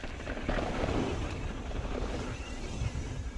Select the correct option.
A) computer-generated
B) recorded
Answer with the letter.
A